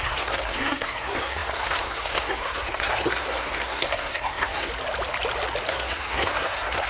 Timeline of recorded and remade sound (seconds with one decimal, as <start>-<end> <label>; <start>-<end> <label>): 0.0-4.7 remade; 4.7-5.7 recorded; 5.7-6.9 remade